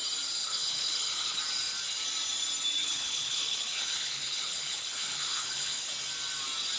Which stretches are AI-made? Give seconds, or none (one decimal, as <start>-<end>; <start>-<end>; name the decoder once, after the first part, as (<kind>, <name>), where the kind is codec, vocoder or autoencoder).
0.4-1.4 (codec, HILCodec); 2.8-5.9

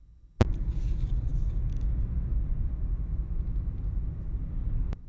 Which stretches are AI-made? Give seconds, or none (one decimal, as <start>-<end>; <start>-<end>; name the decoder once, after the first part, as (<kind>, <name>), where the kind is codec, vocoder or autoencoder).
none

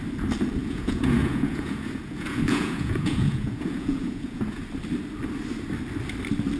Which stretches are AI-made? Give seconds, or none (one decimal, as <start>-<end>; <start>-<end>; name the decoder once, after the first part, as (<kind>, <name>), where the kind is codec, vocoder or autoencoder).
0.6-4.6 (vocoder, Vocos)

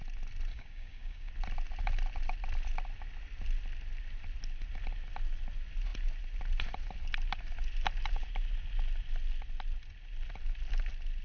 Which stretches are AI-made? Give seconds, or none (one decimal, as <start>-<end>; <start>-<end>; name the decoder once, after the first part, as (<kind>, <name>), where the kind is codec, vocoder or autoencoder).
0.5-1.3 (codec, DAC)

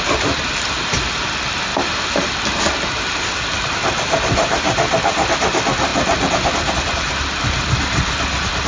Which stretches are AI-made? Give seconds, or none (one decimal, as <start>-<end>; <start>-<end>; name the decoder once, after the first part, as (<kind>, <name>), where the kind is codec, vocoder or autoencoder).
none

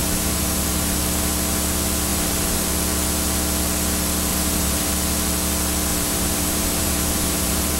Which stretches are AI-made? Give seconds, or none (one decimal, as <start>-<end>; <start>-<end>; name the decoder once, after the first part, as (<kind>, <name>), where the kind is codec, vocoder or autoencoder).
0.0-1.0 (vocoder, BigVGAN v2); 2.1-2.7; 4.3-4.9; 5.9-7.8